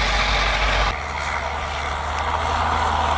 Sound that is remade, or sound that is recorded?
recorded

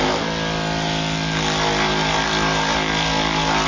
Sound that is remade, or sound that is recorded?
recorded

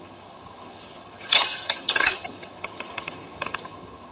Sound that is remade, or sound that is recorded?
remade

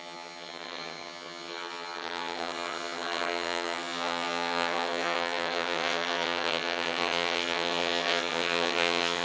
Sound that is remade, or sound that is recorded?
remade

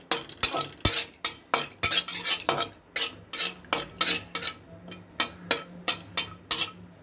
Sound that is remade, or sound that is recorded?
recorded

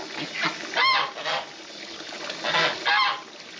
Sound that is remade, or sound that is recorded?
recorded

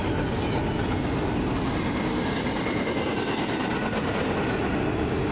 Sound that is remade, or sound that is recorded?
recorded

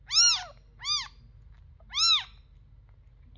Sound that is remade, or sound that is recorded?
recorded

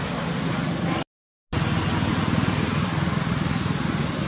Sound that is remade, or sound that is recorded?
recorded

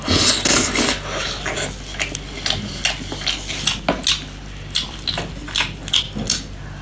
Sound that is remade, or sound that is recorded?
recorded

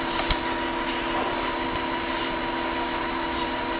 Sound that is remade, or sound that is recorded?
recorded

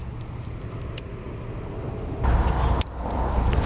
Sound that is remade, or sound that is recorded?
recorded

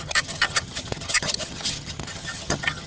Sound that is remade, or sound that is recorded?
remade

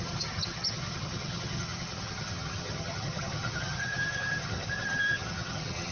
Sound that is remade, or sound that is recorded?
remade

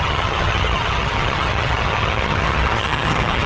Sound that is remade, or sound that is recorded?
remade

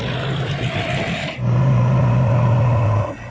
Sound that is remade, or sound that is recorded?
recorded